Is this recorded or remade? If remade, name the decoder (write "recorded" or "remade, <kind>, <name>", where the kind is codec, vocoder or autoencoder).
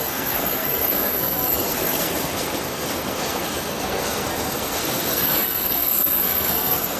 remade, codec, SNAC